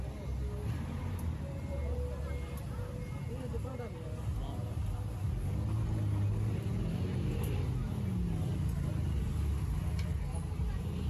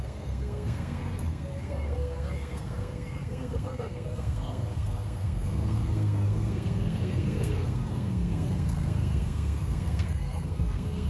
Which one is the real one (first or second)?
first